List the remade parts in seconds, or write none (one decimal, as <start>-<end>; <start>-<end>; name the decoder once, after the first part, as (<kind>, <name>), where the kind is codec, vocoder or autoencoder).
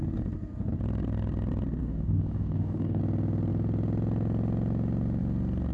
1.8-3.0 (codec, DAC)